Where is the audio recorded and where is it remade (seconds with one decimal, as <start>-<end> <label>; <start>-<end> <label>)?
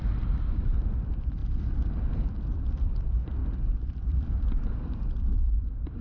0.0-6.0 remade